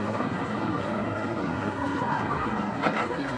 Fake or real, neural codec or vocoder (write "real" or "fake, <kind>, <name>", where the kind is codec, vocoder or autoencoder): fake, codec, SNAC